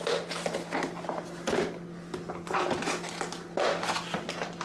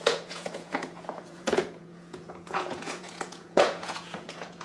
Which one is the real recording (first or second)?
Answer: first